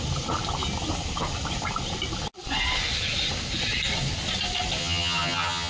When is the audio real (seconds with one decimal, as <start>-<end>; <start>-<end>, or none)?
0.0-4.8